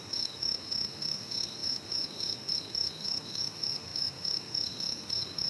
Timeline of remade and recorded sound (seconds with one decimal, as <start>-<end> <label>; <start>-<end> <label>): 0.0-5.5 remade